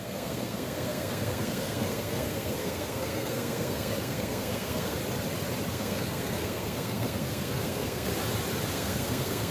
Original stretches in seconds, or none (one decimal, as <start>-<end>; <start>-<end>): 5.0-5.7; 8.1-8.7